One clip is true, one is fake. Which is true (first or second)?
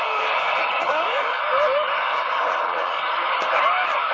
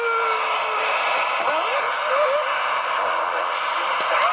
second